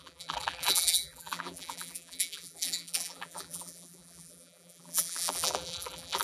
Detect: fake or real fake